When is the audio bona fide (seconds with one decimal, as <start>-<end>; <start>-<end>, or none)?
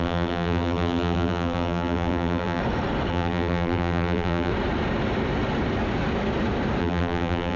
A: 2.6-3.1; 4.5-6.8